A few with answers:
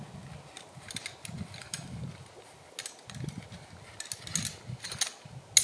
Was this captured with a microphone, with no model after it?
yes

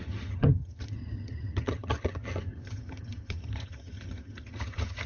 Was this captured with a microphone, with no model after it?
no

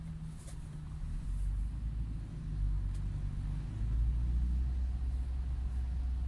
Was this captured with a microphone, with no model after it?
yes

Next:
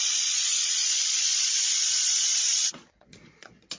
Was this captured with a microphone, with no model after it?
no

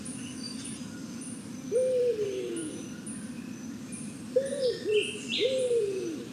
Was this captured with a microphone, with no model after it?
yes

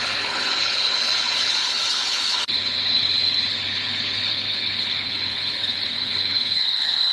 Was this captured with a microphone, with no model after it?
no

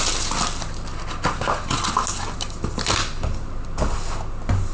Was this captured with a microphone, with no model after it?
yes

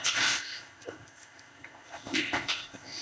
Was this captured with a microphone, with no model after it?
no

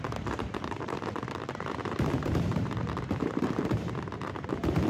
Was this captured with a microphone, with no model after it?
no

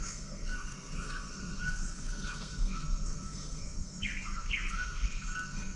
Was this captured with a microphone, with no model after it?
no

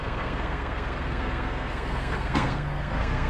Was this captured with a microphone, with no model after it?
no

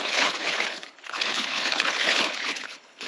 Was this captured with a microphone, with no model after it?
no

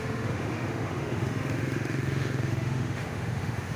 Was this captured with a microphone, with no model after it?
no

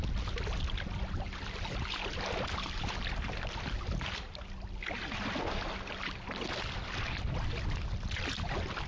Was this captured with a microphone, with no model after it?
yes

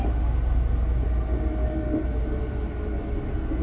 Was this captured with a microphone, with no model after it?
yes